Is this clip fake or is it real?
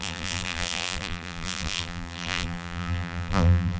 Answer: fake